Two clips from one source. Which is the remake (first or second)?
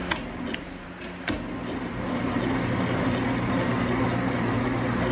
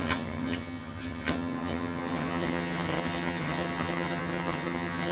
second